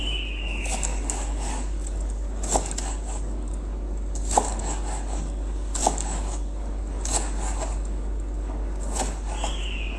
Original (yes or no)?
no